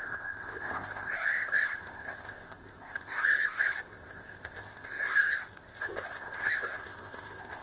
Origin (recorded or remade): remade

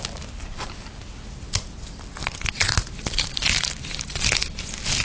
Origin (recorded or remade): recorded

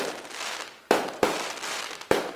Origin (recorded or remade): recorded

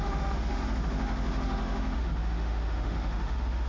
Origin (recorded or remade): remade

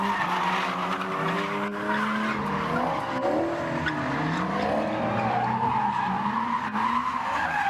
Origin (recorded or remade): recorded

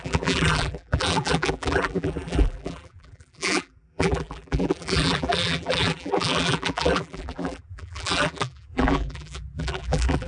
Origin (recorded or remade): remade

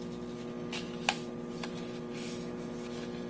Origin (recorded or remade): recorded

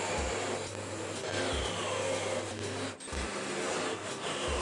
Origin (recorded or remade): recorded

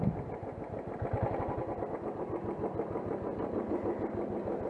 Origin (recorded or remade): recorded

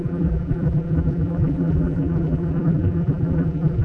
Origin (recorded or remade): remade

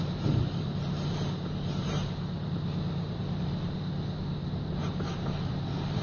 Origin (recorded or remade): remade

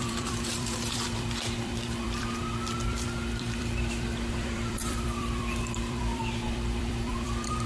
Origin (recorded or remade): remade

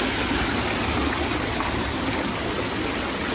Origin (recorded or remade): recorded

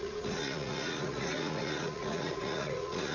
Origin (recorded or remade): remade